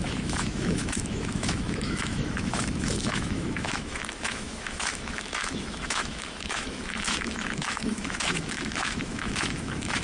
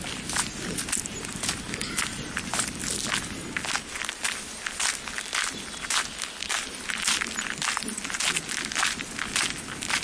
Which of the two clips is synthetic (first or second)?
first